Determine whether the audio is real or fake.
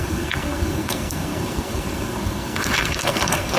fake